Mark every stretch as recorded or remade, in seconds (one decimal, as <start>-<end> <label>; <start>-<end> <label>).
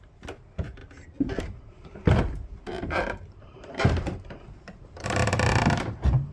0.0-0.8 remade; 0.8-1.4 recorded; 1.4-6.3 remade